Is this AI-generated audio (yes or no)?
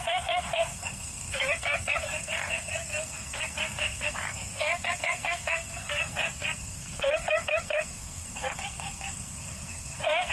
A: yes